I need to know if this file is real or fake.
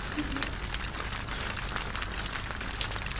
real